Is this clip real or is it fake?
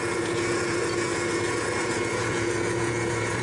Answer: fake